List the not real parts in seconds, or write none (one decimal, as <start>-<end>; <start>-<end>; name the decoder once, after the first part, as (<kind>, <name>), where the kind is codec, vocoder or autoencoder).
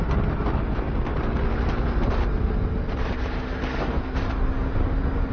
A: none